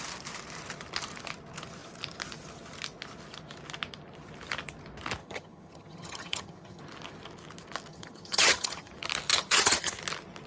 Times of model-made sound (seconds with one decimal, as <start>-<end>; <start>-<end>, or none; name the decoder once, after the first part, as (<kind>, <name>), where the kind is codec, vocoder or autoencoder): 5.2-6.8 (vocoder, HiFi-GAN); 7.9-8.9; 9.4-9.9